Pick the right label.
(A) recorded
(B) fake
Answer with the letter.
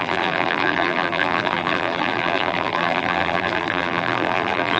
B